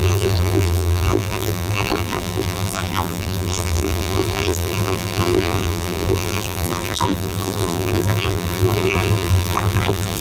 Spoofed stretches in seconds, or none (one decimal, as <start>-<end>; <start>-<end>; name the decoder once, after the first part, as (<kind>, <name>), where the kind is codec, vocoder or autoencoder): 0.0-10.2 (vocoder, BigVGAN v2)